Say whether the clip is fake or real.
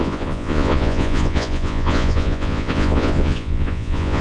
fake